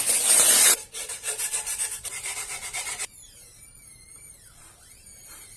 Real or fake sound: fake